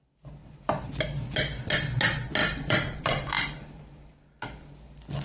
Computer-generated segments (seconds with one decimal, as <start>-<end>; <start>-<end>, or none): 0.4-0.9; 2.4-4.1